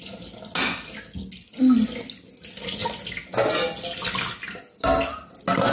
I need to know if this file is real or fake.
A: real